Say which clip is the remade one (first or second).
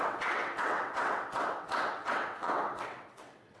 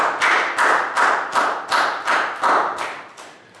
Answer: first